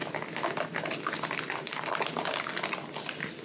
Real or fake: real